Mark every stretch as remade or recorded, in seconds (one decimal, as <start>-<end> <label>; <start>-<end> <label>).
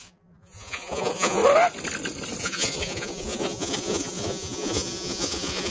0.0-1.4 remade; 1.4-2.4 recorded; 2.4-5.7 remade